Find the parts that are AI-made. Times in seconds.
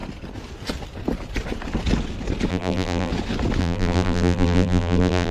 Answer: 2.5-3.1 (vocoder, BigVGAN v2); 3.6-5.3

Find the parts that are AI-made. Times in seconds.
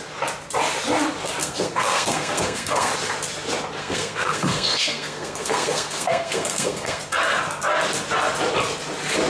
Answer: 1.4-2.9 (codec, SNAC); 3.8-7.0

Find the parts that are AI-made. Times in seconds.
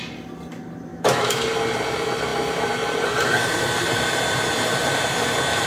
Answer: 0.9-1.4 (autoencoder, DAC-VAE)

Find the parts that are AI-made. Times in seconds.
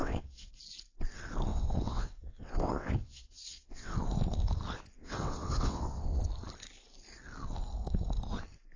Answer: 0.0-0.5 (vocoder, WaveNeXt); 1.5-3.9; 5.0-6.2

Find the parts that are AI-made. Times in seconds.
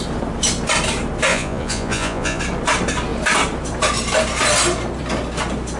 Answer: 1.3-2.4 (vocoder, Vocos)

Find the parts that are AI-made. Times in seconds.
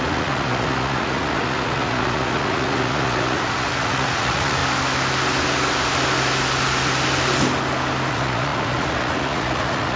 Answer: 0.0-4.6 (vocoder, Vocos); 8.1-10.0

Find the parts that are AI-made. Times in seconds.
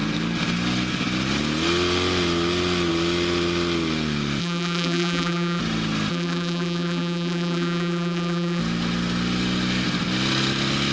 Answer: 4.4-5.6 (vocoder, BigVGAN v2); 6.1-8.6